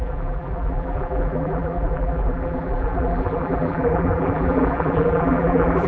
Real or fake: fake